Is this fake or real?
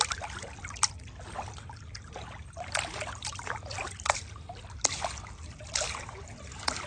real